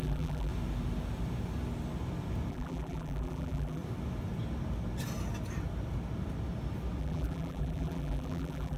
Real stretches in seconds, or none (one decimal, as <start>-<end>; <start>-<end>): 0.5-2.5; 3.8-7.0